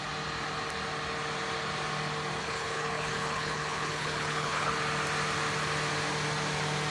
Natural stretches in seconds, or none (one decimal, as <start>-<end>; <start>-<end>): 0.0-2.4; 4.7-6.9